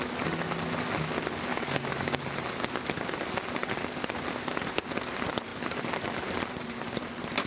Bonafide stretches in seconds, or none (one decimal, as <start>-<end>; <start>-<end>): 0.0-1.5; 2.2-7.5

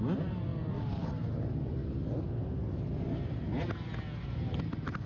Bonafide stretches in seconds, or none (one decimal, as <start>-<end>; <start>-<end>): 0.0-5.1

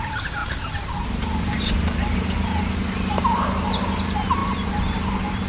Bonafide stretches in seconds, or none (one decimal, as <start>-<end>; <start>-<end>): 0.0-5.5

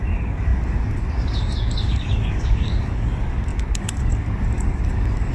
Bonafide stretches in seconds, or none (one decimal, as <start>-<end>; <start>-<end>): none

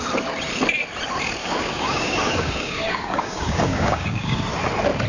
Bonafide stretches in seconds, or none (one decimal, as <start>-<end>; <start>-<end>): 0.0-1.4; 4.5-5.1

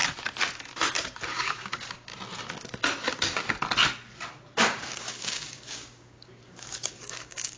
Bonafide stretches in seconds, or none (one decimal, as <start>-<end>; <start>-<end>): 0.0-1.3; 2.1-4.6

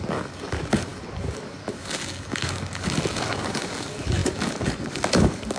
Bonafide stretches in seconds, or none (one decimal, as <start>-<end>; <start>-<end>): none

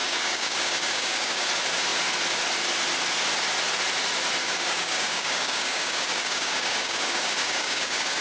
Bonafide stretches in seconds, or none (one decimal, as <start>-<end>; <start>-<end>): 1.4-4.4